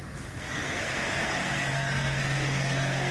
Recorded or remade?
remade